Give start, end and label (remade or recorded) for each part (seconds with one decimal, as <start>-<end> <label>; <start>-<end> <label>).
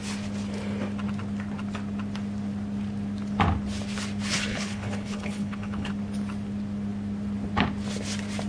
0.0-4.5 recorded; 4.5-5.9 remade; 5.9-8.5 recorded